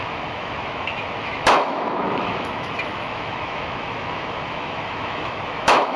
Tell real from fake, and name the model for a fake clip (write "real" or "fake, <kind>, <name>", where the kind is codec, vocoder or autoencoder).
fake, autoencoder, DAC-VAE